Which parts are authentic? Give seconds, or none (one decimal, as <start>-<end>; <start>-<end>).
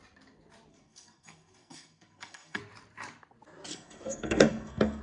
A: 0.0-0.7; 2.6-3.7